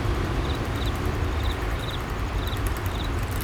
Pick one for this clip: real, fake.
fake